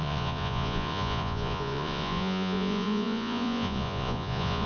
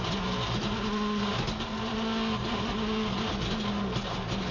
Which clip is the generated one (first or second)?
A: first